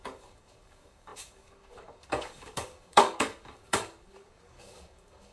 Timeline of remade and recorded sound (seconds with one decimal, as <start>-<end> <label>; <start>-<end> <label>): 0.0-5.3 remade